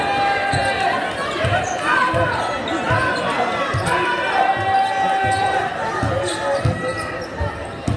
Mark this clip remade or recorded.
recorded